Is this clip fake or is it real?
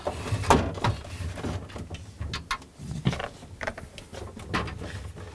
real